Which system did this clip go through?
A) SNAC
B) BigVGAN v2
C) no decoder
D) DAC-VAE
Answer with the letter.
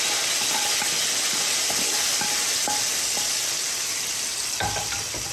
C